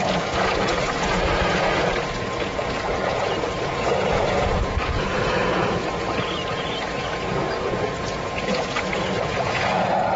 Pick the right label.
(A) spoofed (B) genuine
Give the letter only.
A